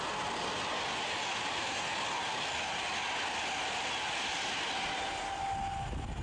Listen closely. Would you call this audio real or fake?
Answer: real